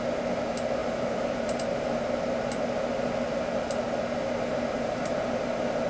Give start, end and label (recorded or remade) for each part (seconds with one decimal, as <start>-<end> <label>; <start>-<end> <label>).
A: 0.0-0.8 recorded; 0.8-2.3 remade; 2.3-4.5 recorded; 4.5-5.4 remade; 5.4-5.9 recorded